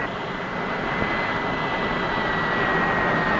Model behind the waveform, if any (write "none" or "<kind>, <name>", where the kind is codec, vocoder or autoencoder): none